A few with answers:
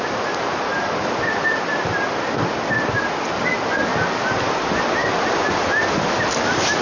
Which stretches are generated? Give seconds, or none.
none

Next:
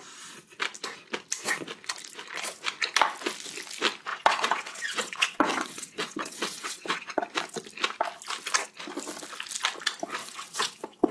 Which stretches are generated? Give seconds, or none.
4.1-7.1; 10.2-11.1

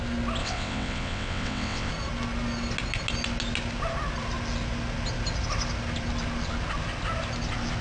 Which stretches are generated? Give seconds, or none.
0.4-1.9

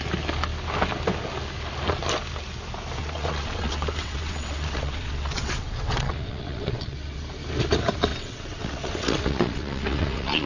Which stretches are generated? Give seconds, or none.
3.0-7.2; 8.1-10.5